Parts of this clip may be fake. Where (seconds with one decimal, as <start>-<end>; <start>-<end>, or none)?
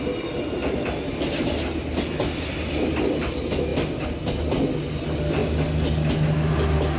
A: none